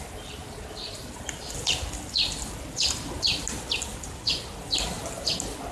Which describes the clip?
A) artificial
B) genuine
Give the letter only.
B